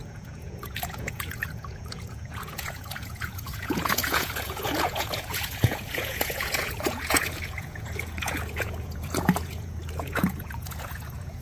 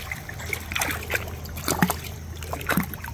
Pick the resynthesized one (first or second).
first